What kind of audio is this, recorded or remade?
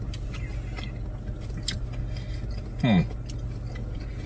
recorded